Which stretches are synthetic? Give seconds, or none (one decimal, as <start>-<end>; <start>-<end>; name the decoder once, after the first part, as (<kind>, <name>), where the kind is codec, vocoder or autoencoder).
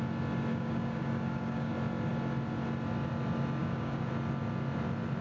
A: 0.5-1.7 (codec, DAC); 3.6-4.1